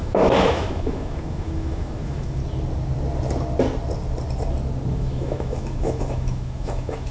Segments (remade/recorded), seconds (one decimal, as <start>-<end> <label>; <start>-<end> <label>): 0.0-2.4 remade; 2.4-4.9 recorded; 4.9-7.1 remade